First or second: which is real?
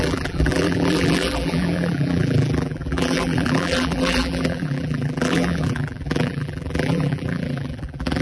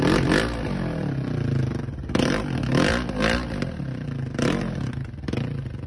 second